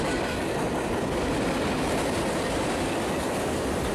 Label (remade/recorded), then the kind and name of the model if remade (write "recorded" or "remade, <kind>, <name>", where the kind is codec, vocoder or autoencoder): recorded